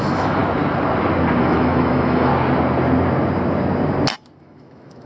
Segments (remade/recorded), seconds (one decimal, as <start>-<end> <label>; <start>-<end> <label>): 0.0-0.4 remade; 0.4-1.4 recorded; 1.4-2.3 remade; 2.3-4.4 recorded; 4.4-5.1 remade